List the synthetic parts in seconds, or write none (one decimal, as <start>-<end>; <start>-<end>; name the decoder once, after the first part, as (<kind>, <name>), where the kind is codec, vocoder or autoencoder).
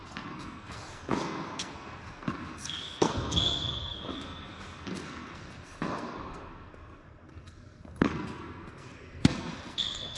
0.0-10.2 (codec, SNAC)